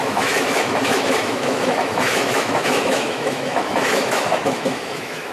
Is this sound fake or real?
fake